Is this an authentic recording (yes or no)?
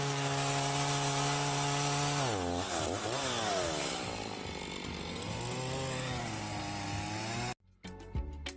yes